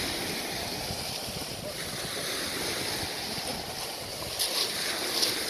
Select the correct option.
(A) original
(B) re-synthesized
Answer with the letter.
A